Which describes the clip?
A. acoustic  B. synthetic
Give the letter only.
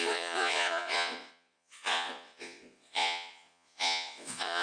B